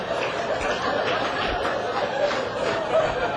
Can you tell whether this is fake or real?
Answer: fake